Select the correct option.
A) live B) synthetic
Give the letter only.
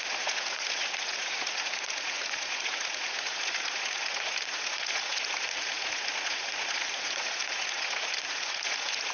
B